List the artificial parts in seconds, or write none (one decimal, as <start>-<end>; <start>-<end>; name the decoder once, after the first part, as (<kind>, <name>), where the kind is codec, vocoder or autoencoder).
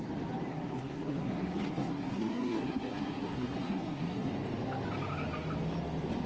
0.5-4.3 (codec, SNAC)